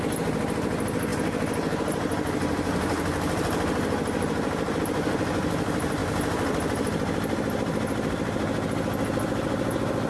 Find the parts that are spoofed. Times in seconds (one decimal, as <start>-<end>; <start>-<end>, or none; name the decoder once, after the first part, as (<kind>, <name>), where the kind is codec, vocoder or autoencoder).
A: none